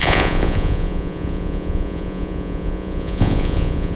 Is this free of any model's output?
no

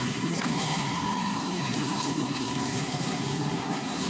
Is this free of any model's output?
no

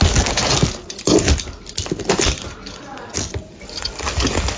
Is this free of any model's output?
yes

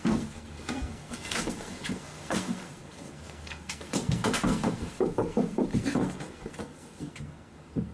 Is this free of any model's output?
no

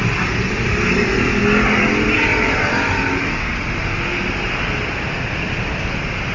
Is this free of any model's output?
yes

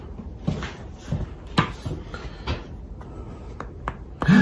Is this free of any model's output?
yes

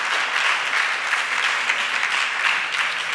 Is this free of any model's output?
yes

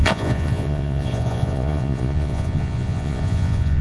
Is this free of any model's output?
no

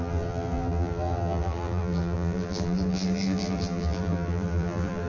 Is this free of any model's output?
no